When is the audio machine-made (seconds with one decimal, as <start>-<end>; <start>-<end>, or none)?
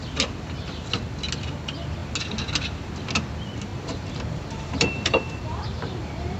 3.7-6.4